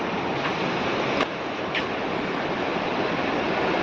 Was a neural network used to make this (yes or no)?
no